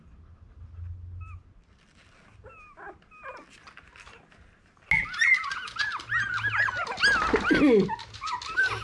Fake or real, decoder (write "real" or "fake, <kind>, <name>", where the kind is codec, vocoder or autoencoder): real